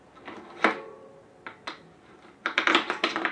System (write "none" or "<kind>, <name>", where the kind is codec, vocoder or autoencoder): none